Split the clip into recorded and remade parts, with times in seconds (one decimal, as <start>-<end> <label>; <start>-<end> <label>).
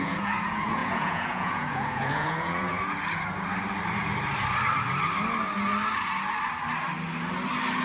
0.0-2.7 remade; 2.7-7.8 recorded